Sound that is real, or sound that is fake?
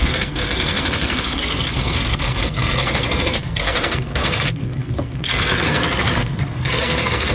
fake